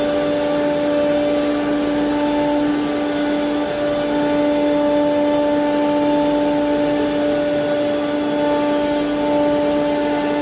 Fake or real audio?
real